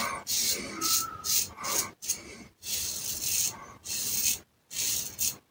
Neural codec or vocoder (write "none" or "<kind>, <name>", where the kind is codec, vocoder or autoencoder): none